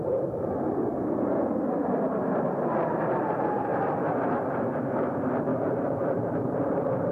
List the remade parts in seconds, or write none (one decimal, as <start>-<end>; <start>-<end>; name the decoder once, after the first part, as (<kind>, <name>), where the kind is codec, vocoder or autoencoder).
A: 0.0-3.7 (vocoder, BigVGAN v2); 5.0-7.1